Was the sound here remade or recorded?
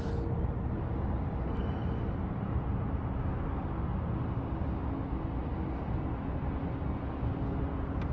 recorded